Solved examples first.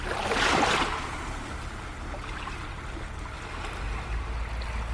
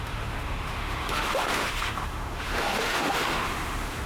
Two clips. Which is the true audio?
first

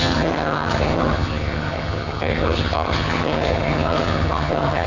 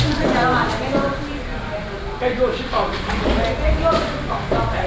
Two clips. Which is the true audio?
second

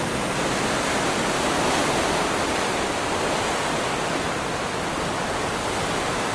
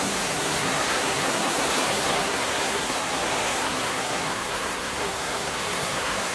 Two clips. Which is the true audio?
first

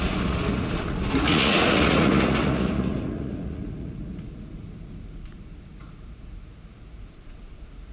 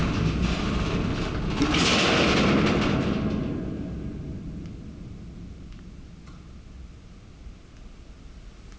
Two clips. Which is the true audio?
second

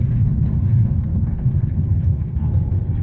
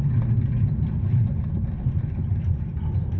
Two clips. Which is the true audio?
second